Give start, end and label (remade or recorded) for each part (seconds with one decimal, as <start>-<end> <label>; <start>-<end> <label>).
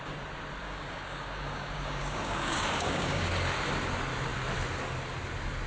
0.0-0.6 recorded; 0.6-3.3 remade; 3.3-5.7 recorded